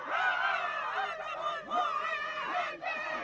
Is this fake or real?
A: real